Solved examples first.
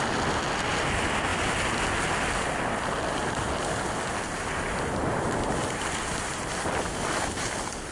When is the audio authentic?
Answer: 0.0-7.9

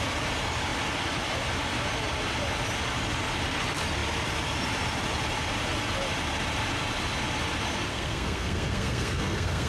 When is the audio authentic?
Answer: 0.0-7.9

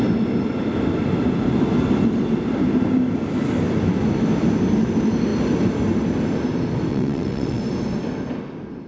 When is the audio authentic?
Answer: 0.0-6.9; 7.6-8.9